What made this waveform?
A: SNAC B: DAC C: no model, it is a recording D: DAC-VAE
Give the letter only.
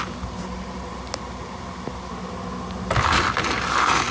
C